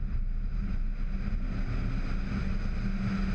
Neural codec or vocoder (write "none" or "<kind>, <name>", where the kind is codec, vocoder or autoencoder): none